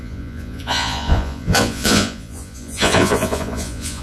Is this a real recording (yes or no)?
no